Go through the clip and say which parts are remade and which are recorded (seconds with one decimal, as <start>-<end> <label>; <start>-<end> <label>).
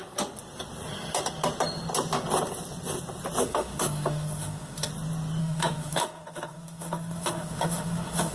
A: 0.0-3.4 recorded; 3.4-4.9 remade; 4.9-5.4 recorded; 5.4-8.3 remade